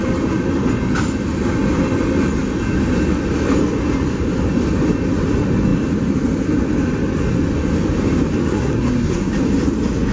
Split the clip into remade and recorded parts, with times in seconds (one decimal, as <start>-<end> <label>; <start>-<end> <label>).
0.0-8.4 recorded; 8.4-9.3 remade; 9.3-10.1 recorded

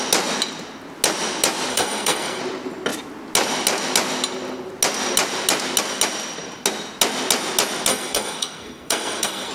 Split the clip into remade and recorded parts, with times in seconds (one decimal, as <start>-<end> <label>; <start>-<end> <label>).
0.0-1.7 recorded; 1.7-2.4 remade; 2.4-7.9 recorded; 7.9-9.5 remade

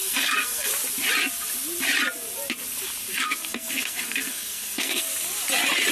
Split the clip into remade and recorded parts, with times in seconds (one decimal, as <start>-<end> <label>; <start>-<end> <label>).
0.0-0.7 remade; 0.7-3.1 recorded; 3.1-5.1 remade; 5.1-5.9 recorded

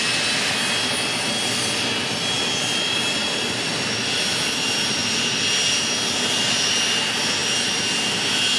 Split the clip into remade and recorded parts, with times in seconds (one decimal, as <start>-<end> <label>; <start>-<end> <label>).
0.0-8.6 recorded